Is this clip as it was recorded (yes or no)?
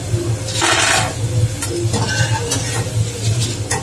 yes